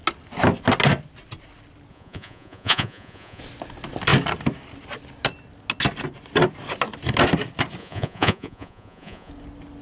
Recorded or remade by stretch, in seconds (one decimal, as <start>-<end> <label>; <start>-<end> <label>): 0.0-1.9 recorded; 1.9-3.4 remade; 3.4-7.8 recorded; 7.8-9.3 remade; 9.3-9.8 recorded